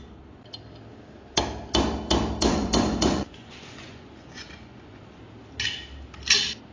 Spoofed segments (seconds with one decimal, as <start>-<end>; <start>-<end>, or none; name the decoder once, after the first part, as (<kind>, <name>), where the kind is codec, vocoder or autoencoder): 2.5-5.0 (vocoder, Vocos)